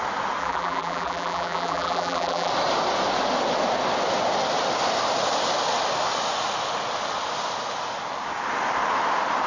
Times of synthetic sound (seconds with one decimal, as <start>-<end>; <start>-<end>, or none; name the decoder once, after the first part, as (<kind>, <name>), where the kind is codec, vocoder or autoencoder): 0.4-2.5 (vocoder, BigVGAN v2)